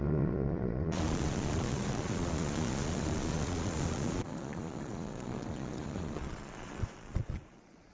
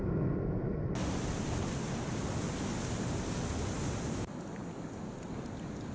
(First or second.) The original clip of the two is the second